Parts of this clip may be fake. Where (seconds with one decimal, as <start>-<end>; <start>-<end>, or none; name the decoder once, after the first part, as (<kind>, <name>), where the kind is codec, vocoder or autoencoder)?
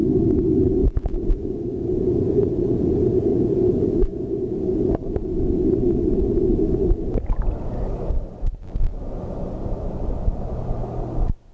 0.8-2.9 (vocoder, Vocos); 3.3-4.2